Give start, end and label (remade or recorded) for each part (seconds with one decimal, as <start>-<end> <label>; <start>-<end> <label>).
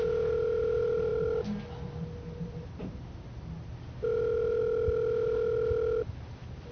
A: 0.0-6.7 recorded